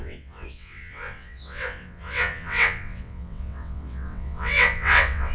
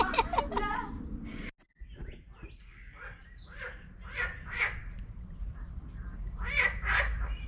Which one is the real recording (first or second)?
second